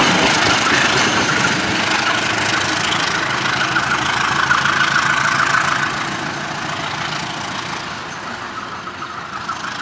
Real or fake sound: real